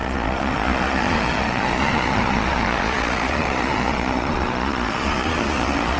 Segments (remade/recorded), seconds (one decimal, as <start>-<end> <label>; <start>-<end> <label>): 0.0-6.0 remade

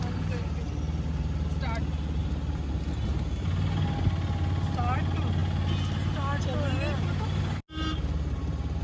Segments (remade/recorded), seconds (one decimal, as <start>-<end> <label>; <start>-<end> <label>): 0.0-8.8 recorded

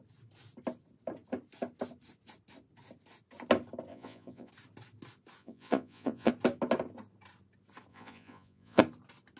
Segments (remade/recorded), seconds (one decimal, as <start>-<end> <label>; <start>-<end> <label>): 0.0-3.9 recorded; 3.9-4.5 remade; 4.5-5.4 recorded; 5.4-6.3 remade; 6.3-7.9 recorded; 7.9-8.8 remade; 8.8-9.4 recorded

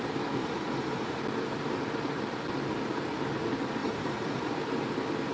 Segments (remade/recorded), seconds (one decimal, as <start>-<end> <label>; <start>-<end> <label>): 0.0-0.4 recorded; 0.4-1.2 remade; 1.2-3.8 recorded; 3.8-4.5 remade; 4.5-5.3 recorded

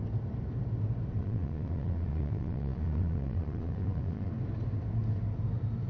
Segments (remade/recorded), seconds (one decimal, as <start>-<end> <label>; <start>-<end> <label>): 0.0-1.2 recorded; 1.2-4.3 remade; 4.3-5.9 recorded

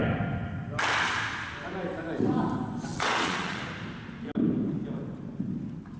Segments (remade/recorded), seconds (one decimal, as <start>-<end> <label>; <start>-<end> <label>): 0.0-2.9 recorded; 2.9-3.6 remade; 3.6-6.0 recorded

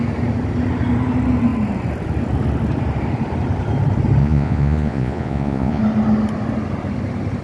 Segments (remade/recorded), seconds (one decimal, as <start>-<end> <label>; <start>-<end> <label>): 0.0-4.2 recorded; 4.2-5.8 remade; 5.8-7.4 recorded